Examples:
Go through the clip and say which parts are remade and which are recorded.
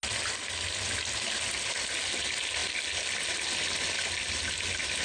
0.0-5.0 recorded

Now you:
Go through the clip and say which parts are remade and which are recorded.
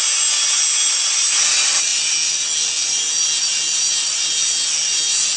0.0-5.4 recorded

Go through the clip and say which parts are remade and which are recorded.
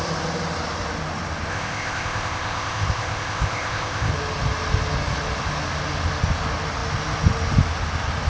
0.0-1.5 recorded; 1.5-4.1 remade; 4.1-8.3 recorded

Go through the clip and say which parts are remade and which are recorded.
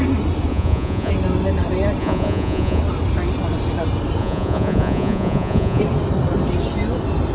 0.0-0.5 recorded; 0.5-1.1 remade; 1.1-2.0 recorded; 2.0-2.8 remade; 2.8-4.2 recorded; 4.2-5.8 remade; 5.8-7.3 recorded